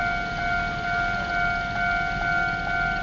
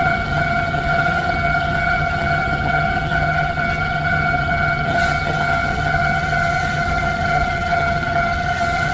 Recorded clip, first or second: first